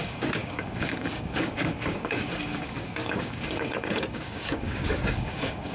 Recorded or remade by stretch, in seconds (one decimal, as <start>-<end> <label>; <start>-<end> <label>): 0.0-5.7 remade